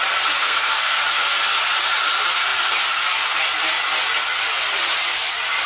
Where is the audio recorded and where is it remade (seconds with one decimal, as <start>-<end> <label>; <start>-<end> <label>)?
0.0-0.4 recorded; 0.4-1.0 remade; 1.0-5.7 recorded